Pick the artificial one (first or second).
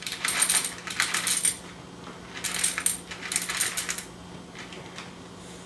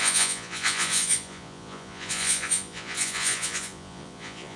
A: second